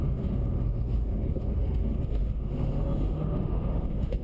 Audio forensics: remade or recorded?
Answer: remade